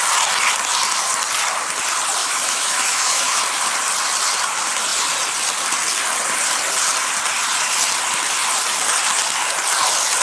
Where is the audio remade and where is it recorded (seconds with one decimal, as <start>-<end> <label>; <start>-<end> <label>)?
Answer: 0.0-2.2 recorded; 2.2-3.4 remade; 3.4-10.2 recorded